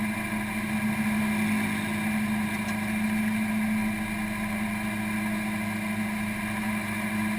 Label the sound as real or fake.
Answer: real